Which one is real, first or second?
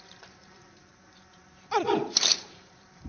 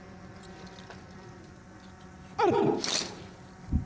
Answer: second